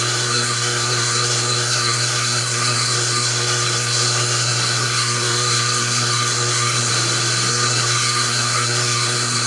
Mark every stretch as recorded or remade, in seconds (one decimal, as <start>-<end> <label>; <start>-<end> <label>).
0.0-6.9 remade; 6.9-7.5 recorded; 7.5-9.5 remade